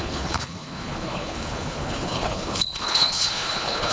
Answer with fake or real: fake